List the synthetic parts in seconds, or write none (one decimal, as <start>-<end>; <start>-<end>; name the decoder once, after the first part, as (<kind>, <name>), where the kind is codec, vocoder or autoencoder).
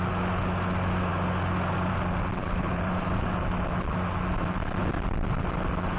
2.4-3.4 (vocoder, BigVGAN v2)